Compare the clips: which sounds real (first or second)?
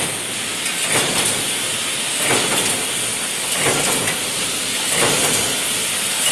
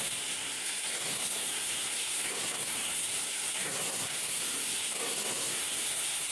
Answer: first